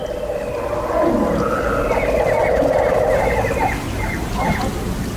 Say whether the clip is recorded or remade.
recorded